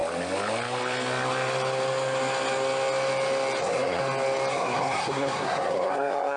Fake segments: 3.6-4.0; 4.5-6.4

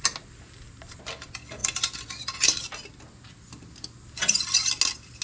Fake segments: none

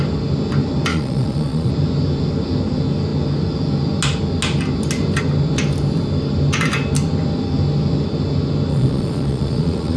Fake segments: 0.9-1.7; 8.7-10.0

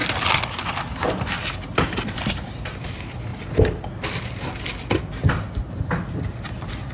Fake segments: 2.8-3.3; 6.5-6.9

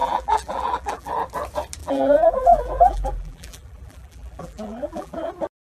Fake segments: 0.0-1.1; 1.8-5.3

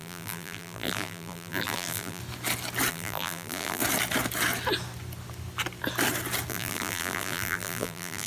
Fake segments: 0.0-2.2; 2.9-3.8; 6.5-8.3

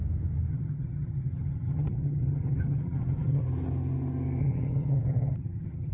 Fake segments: 0.5-3.4; 4.4-5.9